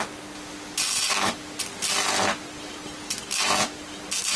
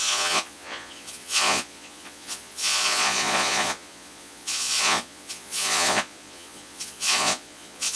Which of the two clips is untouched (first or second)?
first